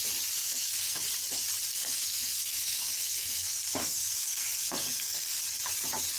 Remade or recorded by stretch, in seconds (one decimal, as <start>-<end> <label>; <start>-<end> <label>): 0.0-0.4 recorded; 0.4-1.0 remade; 1.0-1.7 recorded; 1.7-5.4 remade; 5.4-6.2 recorded